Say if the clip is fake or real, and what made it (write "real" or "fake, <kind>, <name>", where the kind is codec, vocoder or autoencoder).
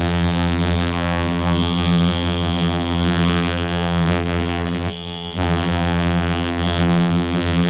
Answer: fake, vocoder, BigVGAN v2